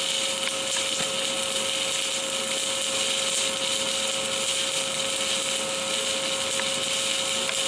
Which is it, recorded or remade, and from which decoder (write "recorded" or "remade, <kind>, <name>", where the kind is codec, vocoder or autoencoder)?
recorded